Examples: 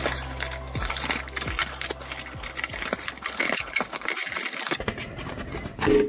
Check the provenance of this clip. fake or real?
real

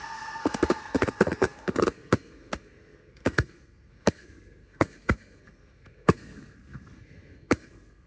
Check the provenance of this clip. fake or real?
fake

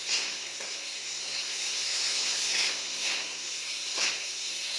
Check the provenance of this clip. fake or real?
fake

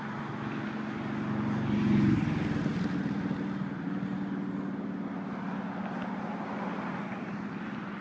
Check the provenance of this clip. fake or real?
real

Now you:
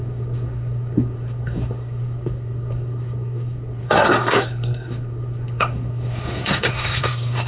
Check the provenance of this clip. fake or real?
fake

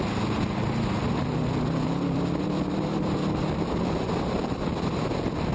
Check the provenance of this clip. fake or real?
real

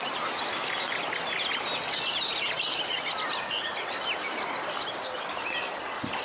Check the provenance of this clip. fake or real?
real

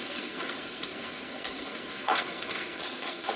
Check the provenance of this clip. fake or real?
fake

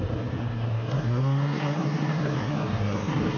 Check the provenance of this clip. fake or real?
fake